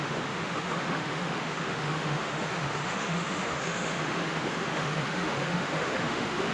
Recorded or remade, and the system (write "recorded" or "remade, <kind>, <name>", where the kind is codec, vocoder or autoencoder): remade, autoencoder, DAC-VAE